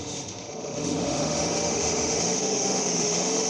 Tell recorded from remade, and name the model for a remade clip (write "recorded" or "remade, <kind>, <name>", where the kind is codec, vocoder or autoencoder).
remade, autoencoder, DAC-VAE